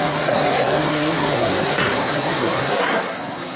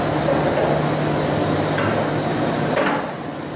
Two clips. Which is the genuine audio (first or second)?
second